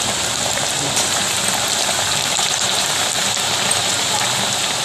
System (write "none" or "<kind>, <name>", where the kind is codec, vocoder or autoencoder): vocoder, BigVGAN v2